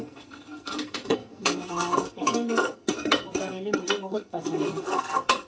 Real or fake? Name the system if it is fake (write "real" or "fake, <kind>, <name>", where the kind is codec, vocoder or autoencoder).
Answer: fake, codec, SNAC